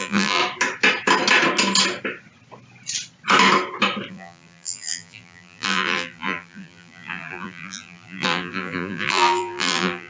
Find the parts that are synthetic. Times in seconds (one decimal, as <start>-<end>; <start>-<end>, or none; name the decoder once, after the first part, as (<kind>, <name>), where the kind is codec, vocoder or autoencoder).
0.0-0.4 (vocoder, BigVGAN v2); 4.1-10.1